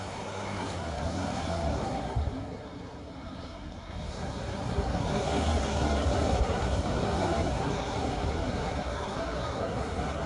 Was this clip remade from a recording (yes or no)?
yes